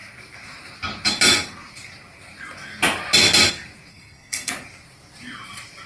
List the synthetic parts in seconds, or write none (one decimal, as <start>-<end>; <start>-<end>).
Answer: 3.9-4.5